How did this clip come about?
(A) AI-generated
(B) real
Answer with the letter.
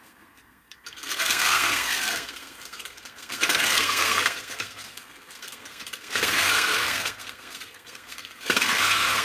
A